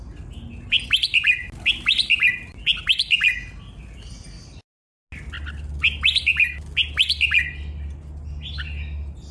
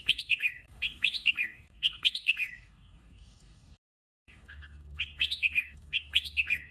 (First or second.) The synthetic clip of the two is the second